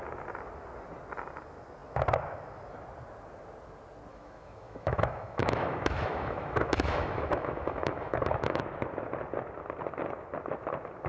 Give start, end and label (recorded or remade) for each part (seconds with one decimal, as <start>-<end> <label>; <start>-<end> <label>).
0.0-4.1 recorded; 4.1-8.6 remade; 8.6-11.1 recorded